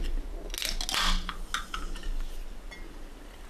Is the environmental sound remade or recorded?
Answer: recorded